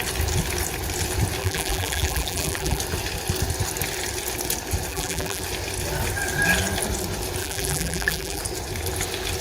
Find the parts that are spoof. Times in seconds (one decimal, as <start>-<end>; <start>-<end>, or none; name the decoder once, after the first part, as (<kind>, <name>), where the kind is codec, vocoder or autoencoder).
1.4-2.8 (vocoder, BigVGAN v2); 4.9-5.4; 7.4-8.4